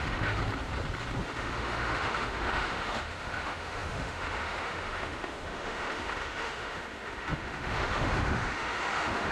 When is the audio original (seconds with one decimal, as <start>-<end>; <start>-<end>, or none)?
0.4-1.2